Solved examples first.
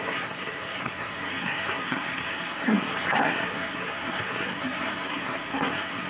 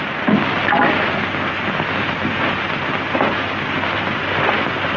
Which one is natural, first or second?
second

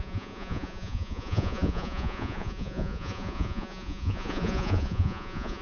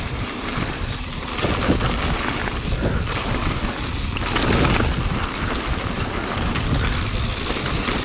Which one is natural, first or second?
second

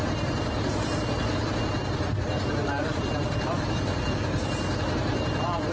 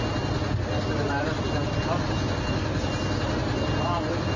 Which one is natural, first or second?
second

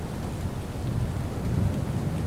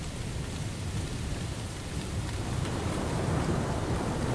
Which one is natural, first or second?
first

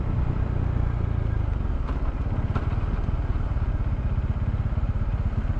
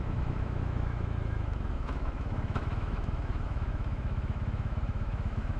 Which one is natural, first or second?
first